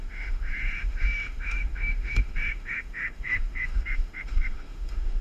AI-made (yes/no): yes